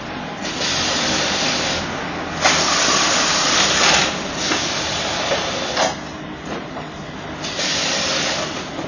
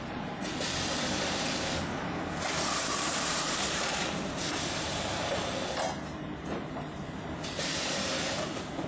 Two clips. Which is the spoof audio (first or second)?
second